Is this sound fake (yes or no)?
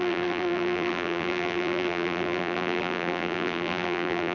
yes